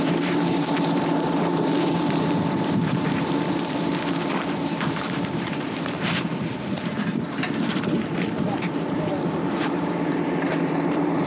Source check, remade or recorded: remade